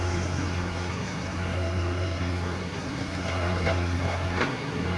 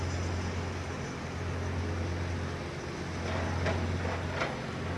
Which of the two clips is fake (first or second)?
first